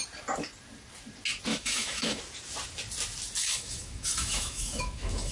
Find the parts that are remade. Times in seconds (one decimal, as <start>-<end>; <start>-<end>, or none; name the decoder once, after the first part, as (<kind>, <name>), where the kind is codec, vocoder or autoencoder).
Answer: 1.5-2.2 (autoencoder, DAC-VAE); 3.4-5.3